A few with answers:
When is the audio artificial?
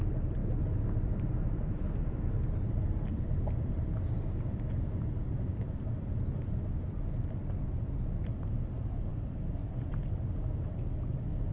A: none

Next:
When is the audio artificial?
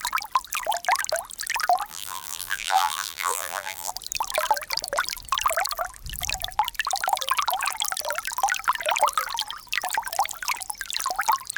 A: 1.9-3.9 (vocoder, BigVGAN v2)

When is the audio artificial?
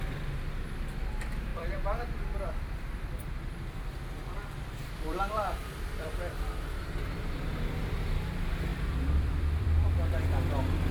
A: 1.5-2.8 (vocoder, BigVGAN v2); 4.4-7.3; 8.7-10.0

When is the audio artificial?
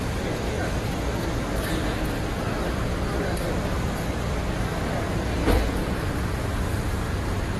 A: 0.6-1.7 (vocoder, BigVGAN v2); 3.4-4.3; 5.4-6.2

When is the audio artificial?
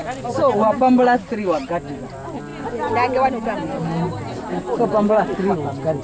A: none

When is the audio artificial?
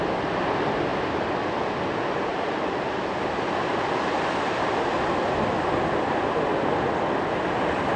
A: 2.3-5.0 (vocoder, BigVGAN v2)